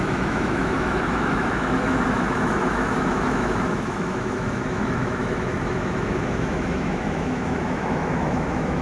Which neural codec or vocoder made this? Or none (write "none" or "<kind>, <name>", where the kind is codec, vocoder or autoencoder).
autoencoder, DAC-VAE